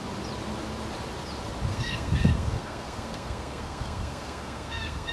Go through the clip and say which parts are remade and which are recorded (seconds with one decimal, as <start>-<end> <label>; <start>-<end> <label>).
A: 0.0-1.7 recorded; 1.7-5.1 remade